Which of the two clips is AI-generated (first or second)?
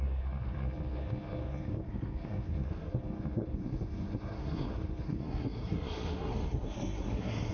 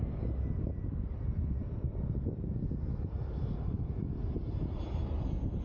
first